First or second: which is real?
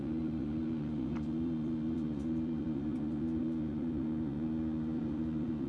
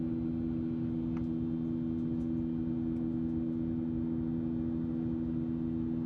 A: second